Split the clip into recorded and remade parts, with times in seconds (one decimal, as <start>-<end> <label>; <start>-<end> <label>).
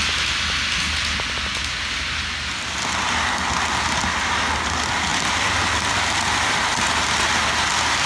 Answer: 0.0-8.1 recorded